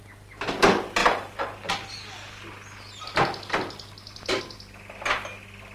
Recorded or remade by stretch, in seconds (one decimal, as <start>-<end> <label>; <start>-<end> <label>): 0.0-5.7 recorded